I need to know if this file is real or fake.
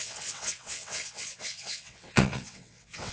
fake